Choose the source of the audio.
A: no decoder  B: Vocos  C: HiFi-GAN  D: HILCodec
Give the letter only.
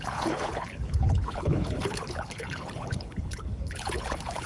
D